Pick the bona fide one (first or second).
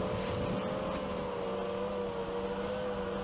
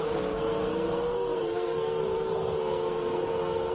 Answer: first